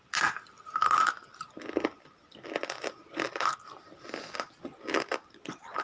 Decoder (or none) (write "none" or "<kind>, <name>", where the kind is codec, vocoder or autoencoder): none